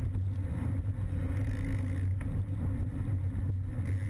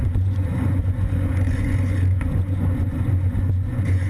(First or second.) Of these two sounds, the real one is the first